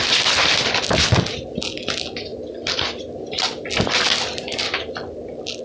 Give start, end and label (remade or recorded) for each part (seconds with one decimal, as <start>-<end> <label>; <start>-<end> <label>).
0.0-5.6 recorded